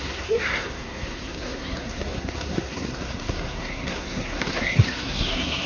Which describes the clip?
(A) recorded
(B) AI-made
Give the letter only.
B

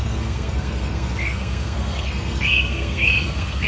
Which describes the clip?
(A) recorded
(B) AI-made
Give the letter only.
B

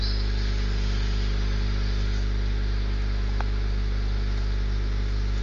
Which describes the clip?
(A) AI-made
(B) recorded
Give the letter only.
B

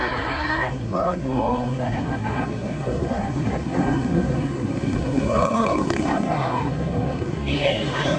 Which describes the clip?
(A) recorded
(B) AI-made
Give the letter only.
B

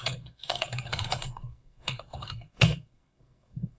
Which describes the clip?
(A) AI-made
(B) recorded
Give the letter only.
A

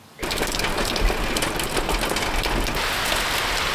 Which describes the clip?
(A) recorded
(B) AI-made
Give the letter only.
A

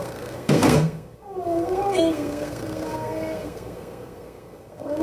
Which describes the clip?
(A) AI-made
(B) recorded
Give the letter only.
A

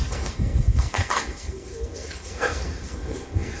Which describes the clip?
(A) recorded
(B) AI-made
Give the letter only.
B